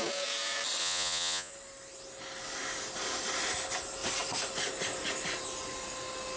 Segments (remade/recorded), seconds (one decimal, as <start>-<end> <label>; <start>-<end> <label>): 0.0-0.8 recorded; 0.8-1.5 remade; 1.5-6.4 recorded